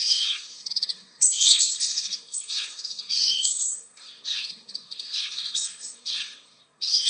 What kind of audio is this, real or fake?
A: fake